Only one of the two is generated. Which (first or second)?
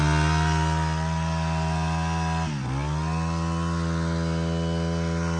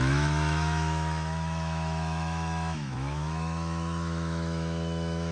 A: second